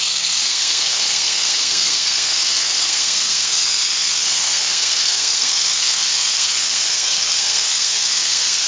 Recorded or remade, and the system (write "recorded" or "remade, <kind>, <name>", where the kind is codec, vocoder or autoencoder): remade, codec, SNAC